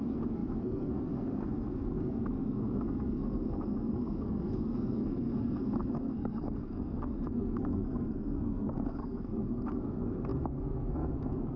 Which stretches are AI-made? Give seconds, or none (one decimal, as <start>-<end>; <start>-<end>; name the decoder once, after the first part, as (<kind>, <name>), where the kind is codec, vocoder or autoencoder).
0.0-11.6 (codec, SNAC)

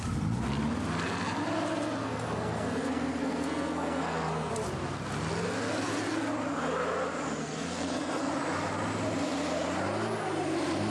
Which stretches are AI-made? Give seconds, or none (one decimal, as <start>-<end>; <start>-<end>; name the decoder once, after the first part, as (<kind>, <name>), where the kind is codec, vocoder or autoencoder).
2.0-4.5 (codec, SNAC); 7.4-8.3

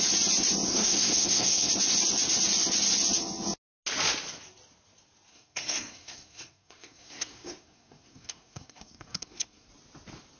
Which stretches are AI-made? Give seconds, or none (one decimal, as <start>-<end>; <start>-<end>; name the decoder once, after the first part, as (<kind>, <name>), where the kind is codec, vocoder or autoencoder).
0.7-1.7 (codec, SNAC); 5.3-9.7

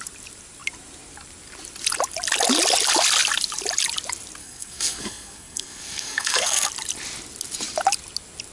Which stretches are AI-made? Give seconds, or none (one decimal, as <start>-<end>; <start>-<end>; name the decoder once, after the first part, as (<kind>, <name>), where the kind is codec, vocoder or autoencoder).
4.4-6.7 (codec, SNAC)